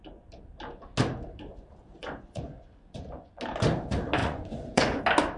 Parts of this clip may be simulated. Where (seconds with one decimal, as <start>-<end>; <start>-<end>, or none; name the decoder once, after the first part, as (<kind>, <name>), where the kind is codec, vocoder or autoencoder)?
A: 2.0-3.4 (vocoder, Vocos); 4.2-5.0